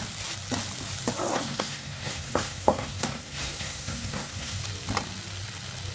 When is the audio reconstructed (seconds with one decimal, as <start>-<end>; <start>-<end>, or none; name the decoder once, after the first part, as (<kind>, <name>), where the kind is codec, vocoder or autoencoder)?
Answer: 1.3-4.6 (codec, SNAC)